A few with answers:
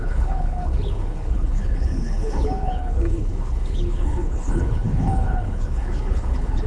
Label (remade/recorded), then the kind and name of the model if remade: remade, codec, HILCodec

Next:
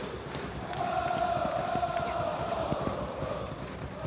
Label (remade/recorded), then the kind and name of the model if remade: recorded